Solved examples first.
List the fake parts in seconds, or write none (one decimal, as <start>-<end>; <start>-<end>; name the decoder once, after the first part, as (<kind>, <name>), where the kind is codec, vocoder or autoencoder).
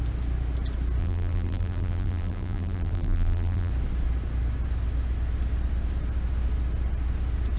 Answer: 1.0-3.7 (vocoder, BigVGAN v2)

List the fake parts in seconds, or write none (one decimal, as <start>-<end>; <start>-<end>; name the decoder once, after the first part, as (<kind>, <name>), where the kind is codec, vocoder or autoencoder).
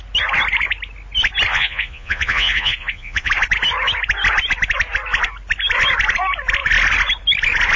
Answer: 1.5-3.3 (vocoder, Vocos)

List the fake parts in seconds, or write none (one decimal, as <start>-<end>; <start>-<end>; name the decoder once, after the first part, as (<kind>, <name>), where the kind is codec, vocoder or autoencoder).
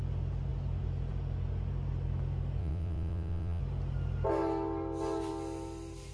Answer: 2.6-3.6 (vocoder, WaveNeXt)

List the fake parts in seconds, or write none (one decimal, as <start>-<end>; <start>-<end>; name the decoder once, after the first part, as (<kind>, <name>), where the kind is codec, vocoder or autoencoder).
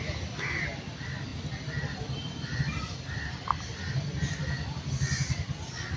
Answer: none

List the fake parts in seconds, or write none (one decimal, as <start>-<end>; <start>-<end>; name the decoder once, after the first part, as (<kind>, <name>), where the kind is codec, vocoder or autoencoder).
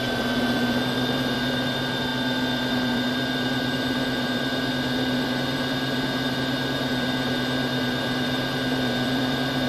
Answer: 0.0-9.7 (vocoder, BigVGAN v2)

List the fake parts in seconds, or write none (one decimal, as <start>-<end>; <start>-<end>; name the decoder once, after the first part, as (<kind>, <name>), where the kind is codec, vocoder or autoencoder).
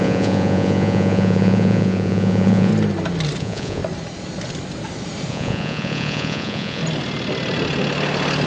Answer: 0.0-2.7 (vocoder, Vocos); 3.4-3.8; 5.3-6.8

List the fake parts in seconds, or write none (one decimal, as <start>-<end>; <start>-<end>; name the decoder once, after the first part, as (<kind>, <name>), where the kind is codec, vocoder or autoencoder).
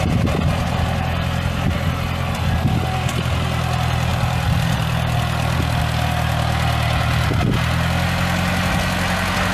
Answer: none